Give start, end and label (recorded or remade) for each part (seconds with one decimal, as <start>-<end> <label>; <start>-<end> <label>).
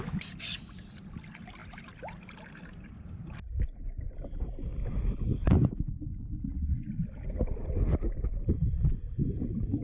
0.0-9.8 recorded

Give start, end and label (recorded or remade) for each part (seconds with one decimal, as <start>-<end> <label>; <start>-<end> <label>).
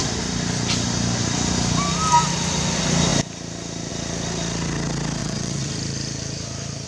0.0-5.2 recorded; 5.2-5.7 remade; 5.7-6.9 recorded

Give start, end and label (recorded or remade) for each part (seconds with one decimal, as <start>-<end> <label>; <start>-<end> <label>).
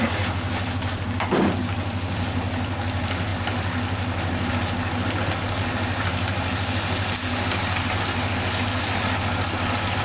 0.0-10.0 recorded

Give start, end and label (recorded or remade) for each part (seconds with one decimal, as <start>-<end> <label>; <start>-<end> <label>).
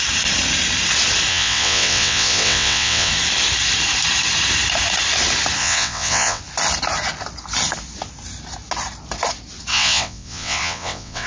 0.0-1.3 recorded; 1.3-3.1 remade; 3.1-5.6 recorded; 5.6-6.4 remade; 6.4-9.7 recorded; 9.7-11.3 remade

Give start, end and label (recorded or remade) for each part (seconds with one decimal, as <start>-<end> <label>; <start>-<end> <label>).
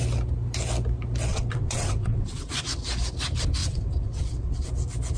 0.0-1.3 recorded; 1.3-2.6 remade; 2.6-3.6 recorded; 3.6-4.7 remade; 4.7-5.2 recorded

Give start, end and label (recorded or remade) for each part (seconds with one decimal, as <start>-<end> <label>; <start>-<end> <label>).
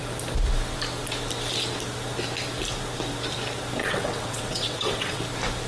0.0-3.8 recorded; 3.8-5.2 remade; 5.2-5.7 recorded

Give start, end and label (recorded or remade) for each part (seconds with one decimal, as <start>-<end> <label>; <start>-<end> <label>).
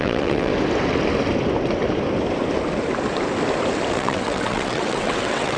0.0-0.5 remade; 0.5-3.9 recorded; 3.9-5.6 remade